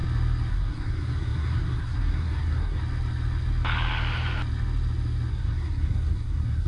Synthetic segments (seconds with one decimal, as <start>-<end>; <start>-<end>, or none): 0.5-2.8; 5.3-6.7